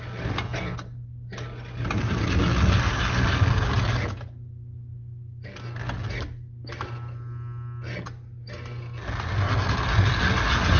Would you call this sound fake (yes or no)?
no